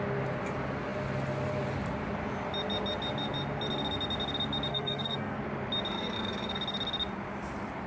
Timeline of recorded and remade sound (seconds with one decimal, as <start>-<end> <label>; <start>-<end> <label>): 0.0-4.7 recorded; 4.7-5.4 remade; 5.4-5.9 recorded; 5.9-6.6 remade; 6.6-7.9 recorded